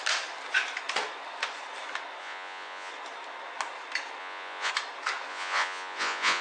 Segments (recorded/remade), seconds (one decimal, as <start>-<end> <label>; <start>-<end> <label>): 0.0-2.2 recorded; 2.2-2.9 remade; 2.9-4.2 recorded; 4.2-4.7 remade; 4.7-5.3 recorded; 5.3-6.4 remade